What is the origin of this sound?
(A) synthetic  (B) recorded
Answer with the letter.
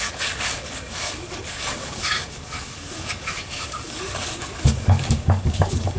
A